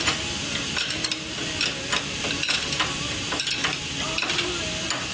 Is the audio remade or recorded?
recorded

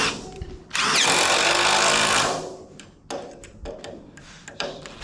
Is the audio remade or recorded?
recorded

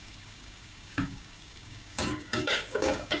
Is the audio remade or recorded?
remade